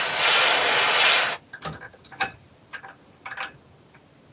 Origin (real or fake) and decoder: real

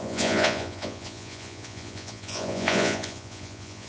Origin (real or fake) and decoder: fake, vocoder, Vocos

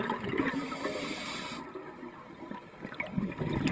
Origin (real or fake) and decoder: real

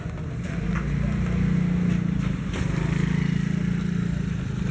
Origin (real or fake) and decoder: real